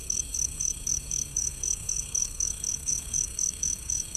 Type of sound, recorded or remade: remade